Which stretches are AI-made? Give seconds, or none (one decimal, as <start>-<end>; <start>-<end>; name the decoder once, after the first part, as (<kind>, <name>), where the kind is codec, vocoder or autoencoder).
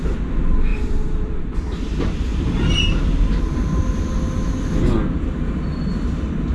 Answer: 0.7-1.3 (vocoder, BigVGAN v2); 2.3-4.1